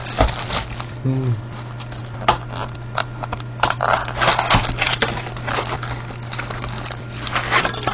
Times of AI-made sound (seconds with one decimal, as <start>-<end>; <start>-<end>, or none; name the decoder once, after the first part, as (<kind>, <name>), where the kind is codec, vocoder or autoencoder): none